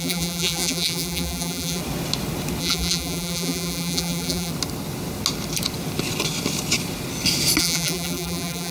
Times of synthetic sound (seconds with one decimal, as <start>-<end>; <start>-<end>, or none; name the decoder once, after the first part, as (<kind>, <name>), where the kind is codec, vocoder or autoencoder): 0.0-1.8 (vocoder, BigVGAN v2); 2.6-4.5; 7.6-8.7